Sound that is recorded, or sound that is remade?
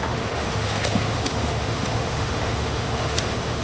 remade